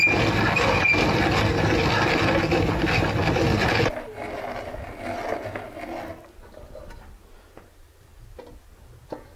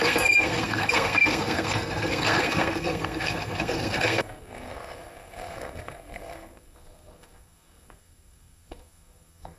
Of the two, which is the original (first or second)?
first